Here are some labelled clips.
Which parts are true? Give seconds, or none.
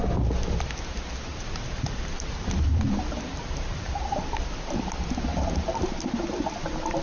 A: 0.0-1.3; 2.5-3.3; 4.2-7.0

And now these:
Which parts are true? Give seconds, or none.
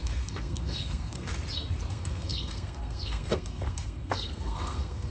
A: 1.3-1.9